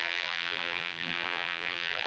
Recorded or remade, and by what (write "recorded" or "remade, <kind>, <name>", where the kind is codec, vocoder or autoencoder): remade, vocoder, BigVGAN v2